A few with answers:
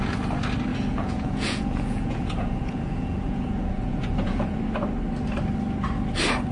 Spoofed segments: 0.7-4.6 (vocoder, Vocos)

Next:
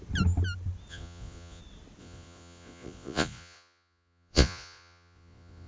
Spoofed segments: 0.9-1.6 (vocoder, Vocos); 2.0-5.7

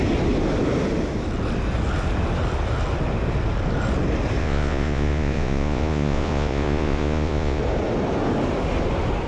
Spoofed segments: 4.4-7.6 (vocoder, Vocos)

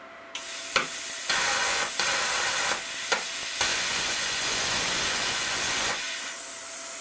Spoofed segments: 1.2-1.9 (vocoder, Vocos); 3.7-6.2